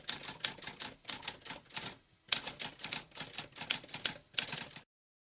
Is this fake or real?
real